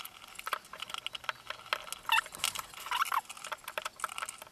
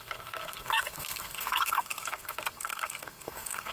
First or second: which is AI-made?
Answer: second